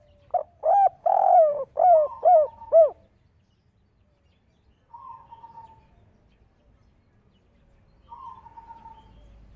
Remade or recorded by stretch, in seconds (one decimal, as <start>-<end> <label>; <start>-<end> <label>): 0.0-1.0 recorded; 1.0-1.7 remade; 1.7-9.6 recorded

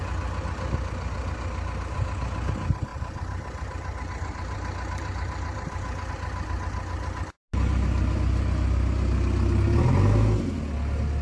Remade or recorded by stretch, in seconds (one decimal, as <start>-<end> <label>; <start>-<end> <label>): 0.0-2.9 recorded; 2.9-6.1 remade; 6.1-11.2 recorded